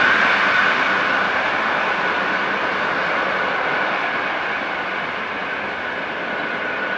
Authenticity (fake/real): real